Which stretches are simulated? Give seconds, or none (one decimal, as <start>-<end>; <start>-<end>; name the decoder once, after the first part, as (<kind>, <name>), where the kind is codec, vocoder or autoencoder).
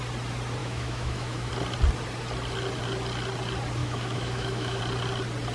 0.6-1.5 (autoencoder, DAC-VAE); 3.8-4.8